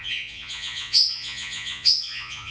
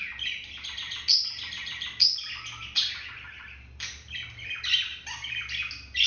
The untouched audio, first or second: second